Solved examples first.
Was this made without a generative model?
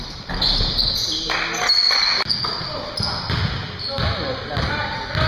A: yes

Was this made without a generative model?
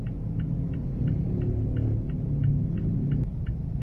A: yes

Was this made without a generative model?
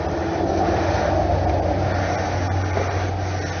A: no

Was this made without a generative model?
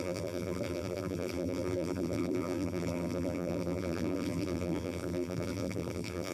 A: no